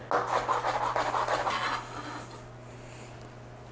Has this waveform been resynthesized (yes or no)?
no